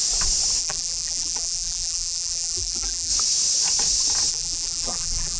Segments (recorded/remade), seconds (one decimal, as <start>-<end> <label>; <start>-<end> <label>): 0.0-0.6 recorded; 0.6-3.1 remade; 3.1-4.3 recorded; 4.3-5.4 remade